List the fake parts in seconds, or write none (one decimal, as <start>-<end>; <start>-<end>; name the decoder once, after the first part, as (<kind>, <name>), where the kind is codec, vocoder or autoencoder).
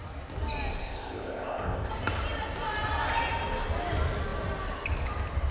0.8-1.9 (codec, ZipCodec)